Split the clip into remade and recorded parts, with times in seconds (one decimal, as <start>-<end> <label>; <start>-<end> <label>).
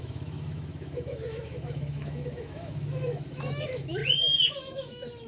0.0-4.0 remade; 4.0-4.5 recorded; 4.5-5.3 remade